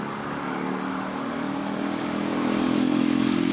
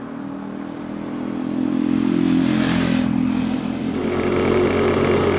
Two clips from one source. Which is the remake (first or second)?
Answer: first